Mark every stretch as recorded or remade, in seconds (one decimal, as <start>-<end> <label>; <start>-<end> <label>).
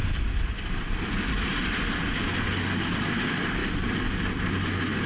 0.0-5.1 recorded